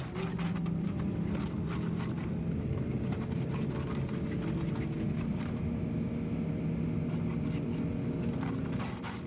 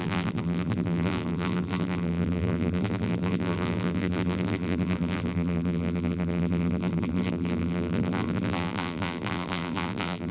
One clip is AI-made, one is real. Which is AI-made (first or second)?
second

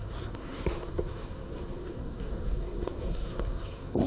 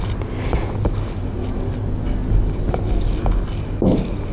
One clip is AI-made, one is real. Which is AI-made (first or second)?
first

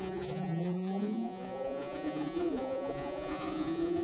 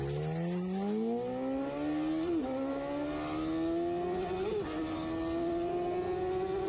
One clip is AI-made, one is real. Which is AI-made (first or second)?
first